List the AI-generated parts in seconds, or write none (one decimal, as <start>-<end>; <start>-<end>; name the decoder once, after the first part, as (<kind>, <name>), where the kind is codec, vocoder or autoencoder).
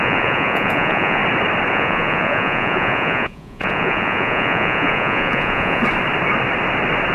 0.0-1.2 (vocoder, Vocos); 1.7-5.8